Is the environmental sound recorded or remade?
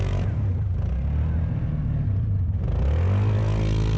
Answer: recorded